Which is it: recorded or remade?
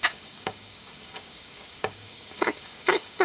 remade